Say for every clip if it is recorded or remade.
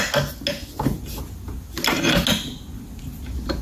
recorded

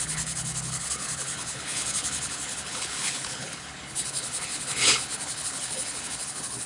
remade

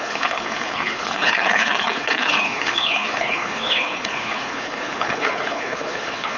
remade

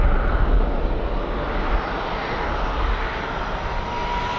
recorded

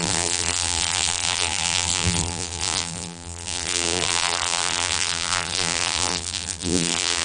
remade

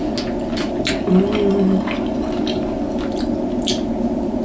recorded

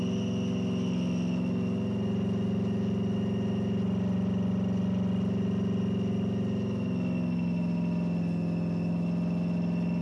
recorded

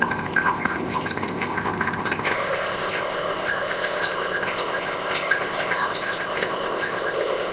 remade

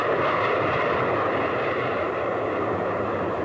remade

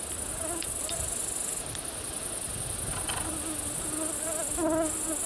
recorded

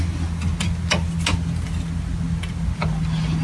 recorded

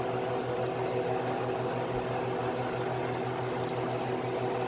recorded